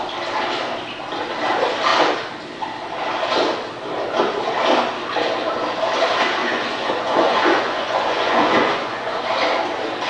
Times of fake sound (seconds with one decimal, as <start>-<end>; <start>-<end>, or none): 6.4-9.2